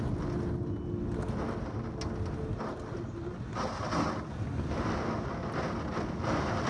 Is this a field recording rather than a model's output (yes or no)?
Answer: yes